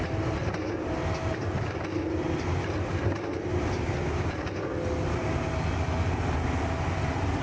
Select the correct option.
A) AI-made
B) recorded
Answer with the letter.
B